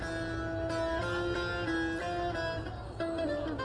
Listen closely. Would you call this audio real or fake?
real